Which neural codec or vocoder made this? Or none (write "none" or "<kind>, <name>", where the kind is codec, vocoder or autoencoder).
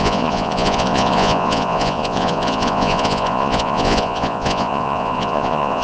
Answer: vocoder, Vocos